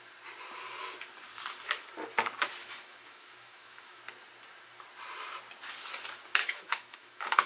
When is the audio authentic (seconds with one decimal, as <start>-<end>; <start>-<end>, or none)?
0.0-2.6; 4.0-6.4

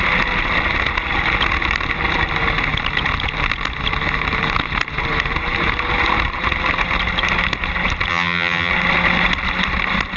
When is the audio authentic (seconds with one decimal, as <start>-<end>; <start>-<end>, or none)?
0.0-8.1; 8.7-10.2

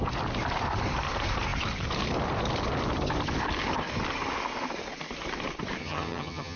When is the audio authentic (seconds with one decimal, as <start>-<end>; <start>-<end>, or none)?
0.0-5.8